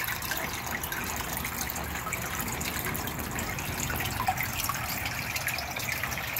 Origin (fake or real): real